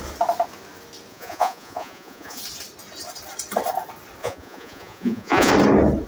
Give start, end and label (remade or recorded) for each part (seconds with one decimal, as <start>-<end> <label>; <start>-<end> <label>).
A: 0.0-1.1 recorded; 1.1-2.4 remade; 2.4-4.2 recorded; 4.2-5.5 remade; 5.5-6.1 recorded